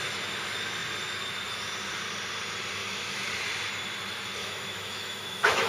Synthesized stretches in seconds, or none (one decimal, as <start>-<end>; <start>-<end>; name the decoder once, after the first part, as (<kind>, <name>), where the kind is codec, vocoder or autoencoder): 2.8-3.3 (autoencoder, DAC-VAE); 4.4-5.7